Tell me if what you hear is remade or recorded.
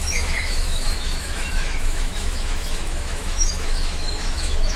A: remade